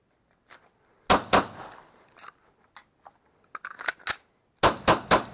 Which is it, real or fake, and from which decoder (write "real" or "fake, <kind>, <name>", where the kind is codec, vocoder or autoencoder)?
real